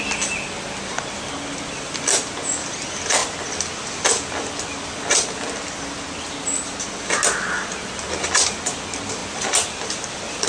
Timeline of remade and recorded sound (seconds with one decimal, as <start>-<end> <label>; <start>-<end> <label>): 0.0-10.5 recorded